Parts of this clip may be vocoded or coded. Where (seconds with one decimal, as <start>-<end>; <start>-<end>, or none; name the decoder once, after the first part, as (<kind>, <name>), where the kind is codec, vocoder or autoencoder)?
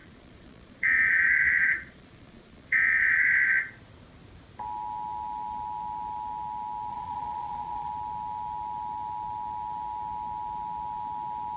0.0-3.3 (vocoder, Vocos); 6.9-7.9